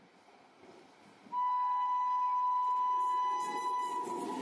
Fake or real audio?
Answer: real